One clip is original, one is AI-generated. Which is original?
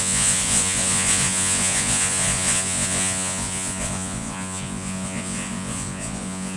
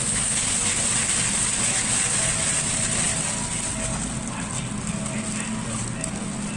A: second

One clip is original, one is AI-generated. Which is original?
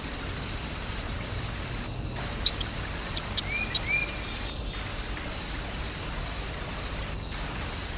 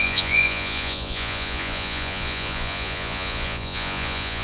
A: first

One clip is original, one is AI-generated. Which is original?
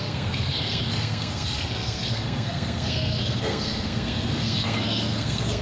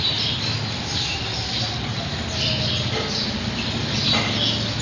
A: second